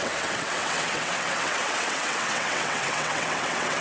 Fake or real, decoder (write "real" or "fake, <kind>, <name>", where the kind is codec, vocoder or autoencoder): fake, vocoder, WaveNeXt